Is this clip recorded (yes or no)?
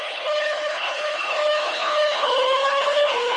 no